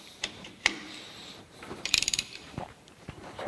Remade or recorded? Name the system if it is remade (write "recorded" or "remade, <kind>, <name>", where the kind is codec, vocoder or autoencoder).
remade, vocoder, BigVGAN v2